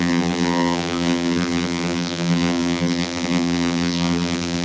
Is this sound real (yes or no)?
no